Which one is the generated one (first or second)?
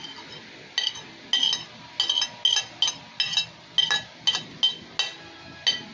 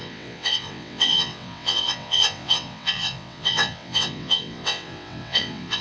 second